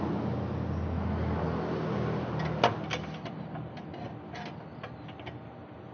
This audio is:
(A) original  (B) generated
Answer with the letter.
A